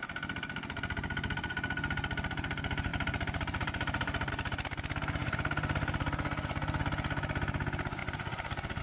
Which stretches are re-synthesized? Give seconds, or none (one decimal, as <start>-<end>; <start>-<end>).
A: 2.9-4.3; 8.0-8.8